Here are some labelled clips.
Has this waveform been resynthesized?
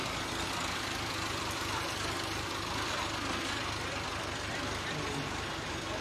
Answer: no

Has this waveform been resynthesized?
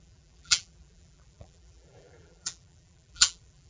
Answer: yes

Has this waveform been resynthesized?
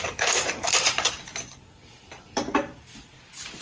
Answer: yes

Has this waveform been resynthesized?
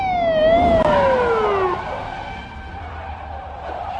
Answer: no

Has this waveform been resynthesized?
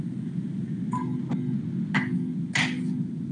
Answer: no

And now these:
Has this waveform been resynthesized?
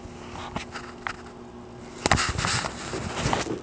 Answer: no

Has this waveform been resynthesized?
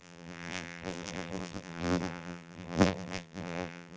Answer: yes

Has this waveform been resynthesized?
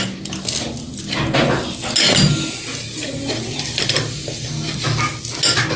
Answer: no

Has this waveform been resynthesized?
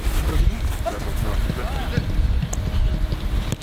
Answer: no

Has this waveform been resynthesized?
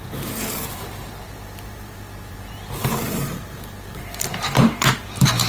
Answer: yes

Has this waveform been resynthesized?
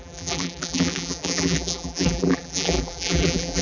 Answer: yes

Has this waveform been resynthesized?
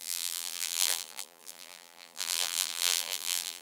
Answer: yes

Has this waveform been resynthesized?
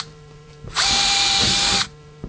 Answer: yes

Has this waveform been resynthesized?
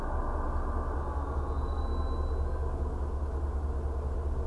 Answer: no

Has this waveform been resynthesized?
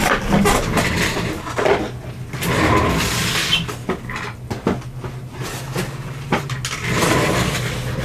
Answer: no